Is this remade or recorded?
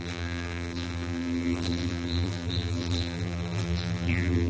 remade